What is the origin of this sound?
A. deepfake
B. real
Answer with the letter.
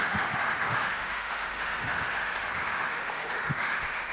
A